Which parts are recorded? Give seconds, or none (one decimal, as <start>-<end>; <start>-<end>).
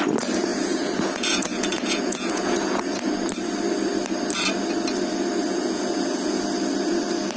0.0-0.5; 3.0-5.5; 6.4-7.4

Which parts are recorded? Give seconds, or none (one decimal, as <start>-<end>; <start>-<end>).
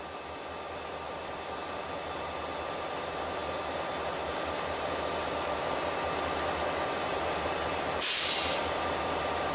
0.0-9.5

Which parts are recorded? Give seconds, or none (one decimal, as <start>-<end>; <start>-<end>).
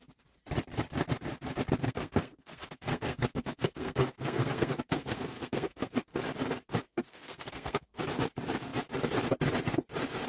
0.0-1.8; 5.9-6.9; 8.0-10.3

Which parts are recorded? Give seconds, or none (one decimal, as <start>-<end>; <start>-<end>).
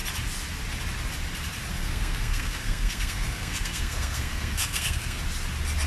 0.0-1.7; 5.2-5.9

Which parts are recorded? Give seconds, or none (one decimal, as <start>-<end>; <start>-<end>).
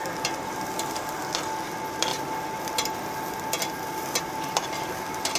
0.0-5.4